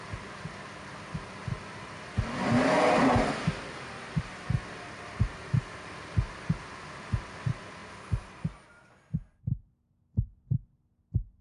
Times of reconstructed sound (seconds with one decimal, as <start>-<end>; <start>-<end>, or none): none